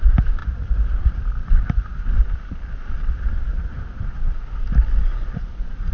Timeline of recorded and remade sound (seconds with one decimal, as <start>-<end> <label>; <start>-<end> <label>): 0.0-0.4 remade; 0.4-1.2 recorded; 1.2-1.9 remade; 1.9-5.0 recorded; 5.0-5.9 remade